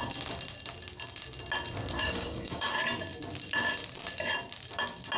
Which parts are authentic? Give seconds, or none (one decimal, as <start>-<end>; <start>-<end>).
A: 0.0-2.0; 2.7-5.2